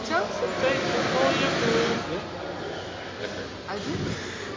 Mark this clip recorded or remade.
recorded